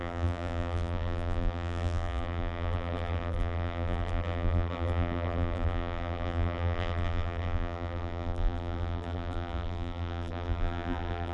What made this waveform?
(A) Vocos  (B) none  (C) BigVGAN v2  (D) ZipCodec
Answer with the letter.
C